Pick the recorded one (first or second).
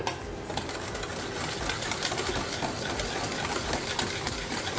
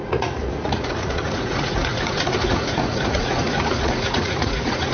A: first